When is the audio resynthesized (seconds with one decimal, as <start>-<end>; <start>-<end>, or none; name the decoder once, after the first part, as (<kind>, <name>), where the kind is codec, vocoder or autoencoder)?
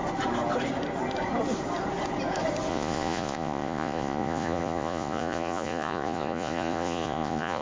2.7-7.6 (vocoder, Vocos)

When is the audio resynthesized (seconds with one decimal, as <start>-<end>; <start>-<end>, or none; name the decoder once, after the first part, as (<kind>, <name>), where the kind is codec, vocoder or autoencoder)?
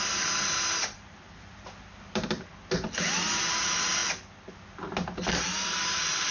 0.8-2.7 (vocoder, BigVGAN v2)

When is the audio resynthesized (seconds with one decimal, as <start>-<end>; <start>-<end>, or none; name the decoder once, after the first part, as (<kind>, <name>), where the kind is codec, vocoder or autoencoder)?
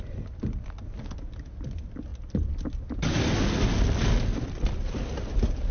none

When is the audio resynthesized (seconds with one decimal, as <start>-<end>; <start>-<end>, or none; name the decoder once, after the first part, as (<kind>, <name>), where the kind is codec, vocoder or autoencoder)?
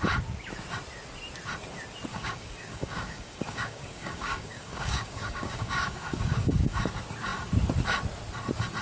2.1-6.8 (codec, DAC)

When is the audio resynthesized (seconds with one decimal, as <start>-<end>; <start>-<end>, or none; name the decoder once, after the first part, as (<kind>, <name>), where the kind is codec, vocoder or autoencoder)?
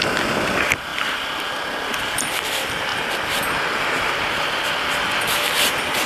0.9-2.1 (vocoder, BigVGAN v2)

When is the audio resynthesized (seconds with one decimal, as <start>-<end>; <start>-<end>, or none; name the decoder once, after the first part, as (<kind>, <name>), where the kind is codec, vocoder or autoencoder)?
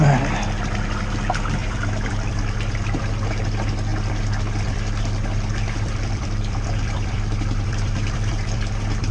1.6-3.0 (vocoder, BigVGAN v2); 3.9-9.1